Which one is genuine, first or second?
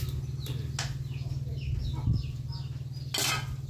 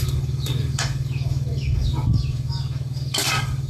first